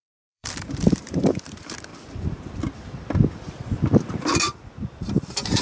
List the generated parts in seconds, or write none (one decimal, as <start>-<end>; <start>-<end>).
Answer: 0.0-1.9